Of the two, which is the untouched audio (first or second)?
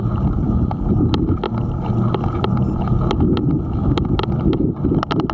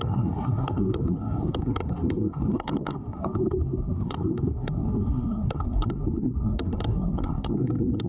first